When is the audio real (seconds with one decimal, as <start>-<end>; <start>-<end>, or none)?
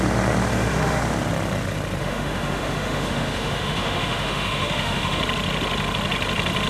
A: 0.0-0.5; 1.0-2.0; 5.2-6.7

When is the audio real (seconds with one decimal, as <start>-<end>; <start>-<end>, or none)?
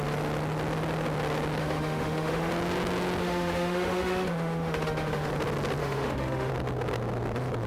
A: 0.0-1.6; 2.5-3.2; 5.3-5.8; 6.5-7.7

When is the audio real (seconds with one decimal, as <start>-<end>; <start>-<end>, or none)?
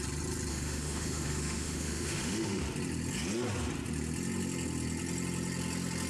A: 0.0-0.5; 2.6-6.1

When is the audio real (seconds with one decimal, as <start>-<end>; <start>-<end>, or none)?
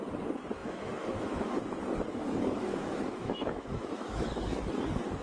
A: 0.0-0.6; 1.5-2.1; 4.7-5.2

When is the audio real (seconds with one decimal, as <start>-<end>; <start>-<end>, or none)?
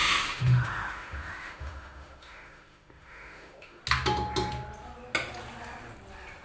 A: 3.8-6.4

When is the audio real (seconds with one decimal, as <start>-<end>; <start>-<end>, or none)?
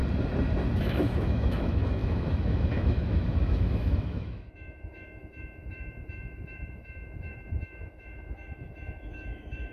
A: 0.0-0.8